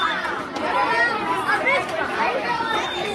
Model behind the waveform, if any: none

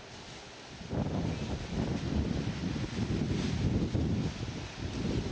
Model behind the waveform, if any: none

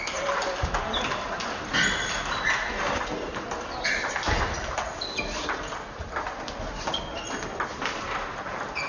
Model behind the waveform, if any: none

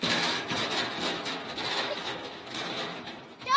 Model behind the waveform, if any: autoencoder, DAC-VAE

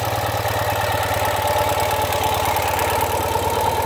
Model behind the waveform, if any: none